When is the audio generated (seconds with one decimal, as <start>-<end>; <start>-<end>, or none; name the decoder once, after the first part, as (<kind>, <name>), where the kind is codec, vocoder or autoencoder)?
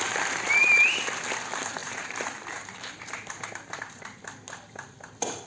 0.6-1.1 (vocoder, BigVGAN v2); 1.8-4.2